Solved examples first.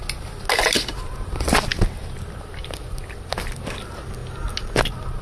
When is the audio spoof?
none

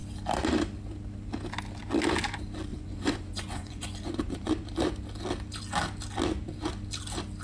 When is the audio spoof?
2.7-4.5 (vocoder, Vocos)

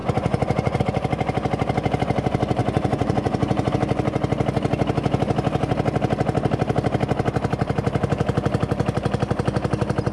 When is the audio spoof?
0.0-0.8 (vocoder, Vocos); 2.6-3.7

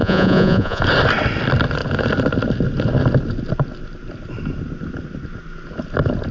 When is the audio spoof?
0.0-0.8 (vocoder, Vocos)

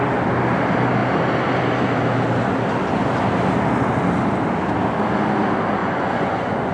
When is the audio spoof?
5.8-6.7 (vocoder, Vocos)

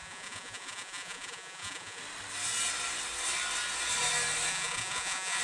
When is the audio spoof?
0.0-2.0 (vocoder, Vocos); 4.5-5.4

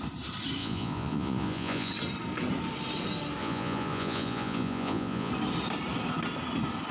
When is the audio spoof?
0.6-1.9 (vocoder, Vocos); 3.4-5.3